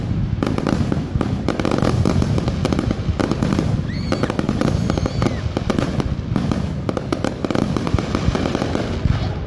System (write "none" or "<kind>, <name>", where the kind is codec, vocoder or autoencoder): none